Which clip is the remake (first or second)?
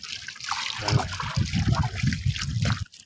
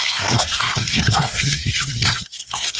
second